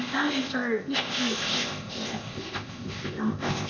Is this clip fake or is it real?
fake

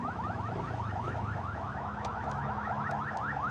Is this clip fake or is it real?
fake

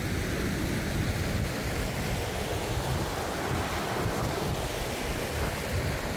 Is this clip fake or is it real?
real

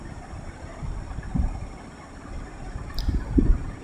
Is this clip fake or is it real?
real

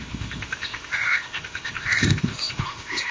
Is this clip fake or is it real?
fake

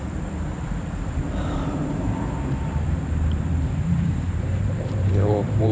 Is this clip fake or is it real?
fake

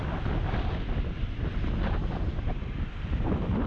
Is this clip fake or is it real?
real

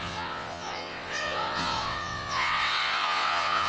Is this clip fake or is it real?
fake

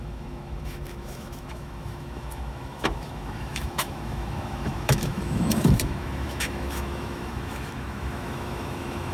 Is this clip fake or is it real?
fake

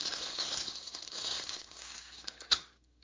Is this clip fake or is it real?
fake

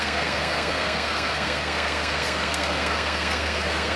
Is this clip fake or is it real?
fake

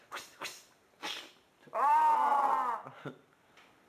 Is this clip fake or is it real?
real